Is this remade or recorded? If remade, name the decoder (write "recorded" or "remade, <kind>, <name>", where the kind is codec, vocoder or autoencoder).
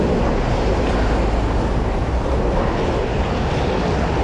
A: recorded